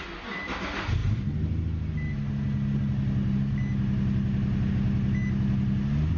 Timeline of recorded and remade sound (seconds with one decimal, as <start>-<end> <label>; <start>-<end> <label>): 0.0-6.2 recorded